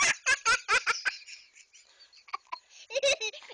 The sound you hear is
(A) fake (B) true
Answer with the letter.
B